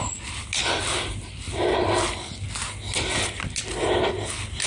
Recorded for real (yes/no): yes